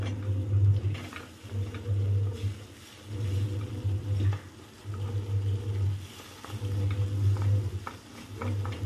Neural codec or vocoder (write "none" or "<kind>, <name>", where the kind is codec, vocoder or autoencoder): none